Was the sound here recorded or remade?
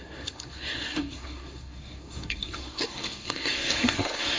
remade